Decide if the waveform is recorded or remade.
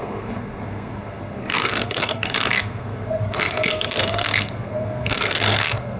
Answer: remade